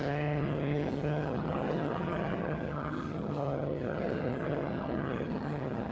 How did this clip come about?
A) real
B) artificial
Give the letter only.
B